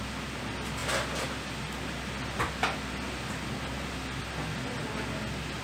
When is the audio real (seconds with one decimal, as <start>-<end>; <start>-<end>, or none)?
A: 0.0-5.6